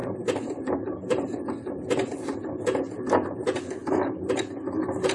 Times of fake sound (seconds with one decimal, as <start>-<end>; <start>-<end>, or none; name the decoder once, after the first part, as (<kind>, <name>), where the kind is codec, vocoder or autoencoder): none